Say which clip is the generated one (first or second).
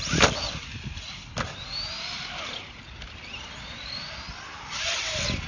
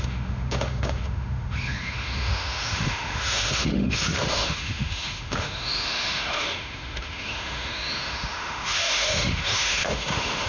second